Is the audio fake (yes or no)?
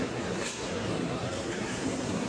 yes